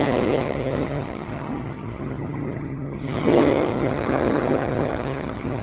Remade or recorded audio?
remade